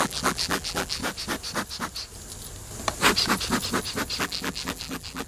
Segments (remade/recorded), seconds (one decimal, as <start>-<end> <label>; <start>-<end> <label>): 0.0-1.0 remade; 1.0-4.2 recorded; 4.2-5.3 remade